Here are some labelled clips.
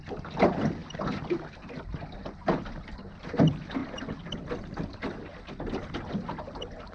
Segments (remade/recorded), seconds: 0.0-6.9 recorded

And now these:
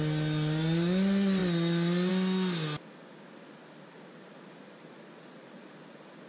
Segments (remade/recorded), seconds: 0.0-6.3 recorded

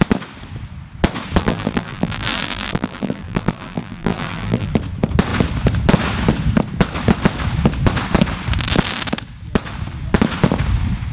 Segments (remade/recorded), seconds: 0.0-1.4 recorded; 1.4-4.7 remade; 4.7-11.1 recorded